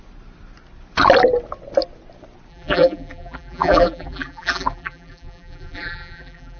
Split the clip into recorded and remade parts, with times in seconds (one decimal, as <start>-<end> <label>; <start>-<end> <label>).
0.0-2.5 recorded; 2.5-6.6 remade